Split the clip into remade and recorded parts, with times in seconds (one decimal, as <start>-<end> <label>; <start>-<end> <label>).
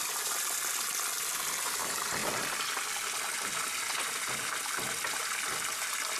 0.0-6.2 recorded